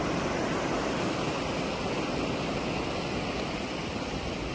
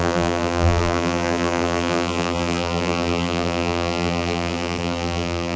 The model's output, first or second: second